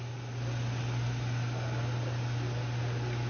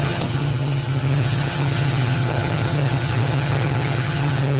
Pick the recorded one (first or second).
first